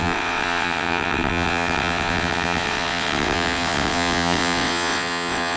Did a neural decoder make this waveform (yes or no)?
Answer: yes